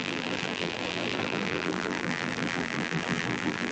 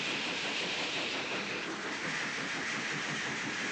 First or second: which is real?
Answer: second